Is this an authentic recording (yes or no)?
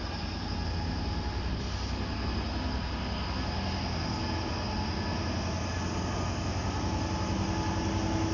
yes